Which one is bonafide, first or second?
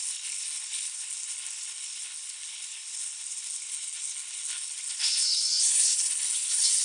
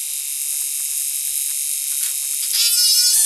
second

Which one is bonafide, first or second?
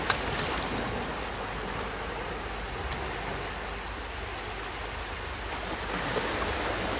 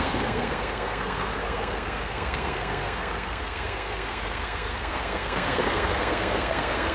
first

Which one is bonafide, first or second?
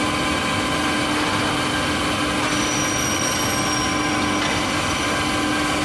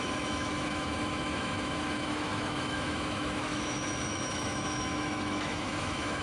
first